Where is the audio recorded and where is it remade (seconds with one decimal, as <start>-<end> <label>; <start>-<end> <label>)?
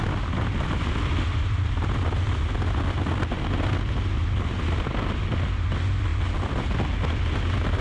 0.0-7.8 recorded